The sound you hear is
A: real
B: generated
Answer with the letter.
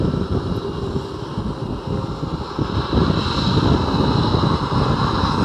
A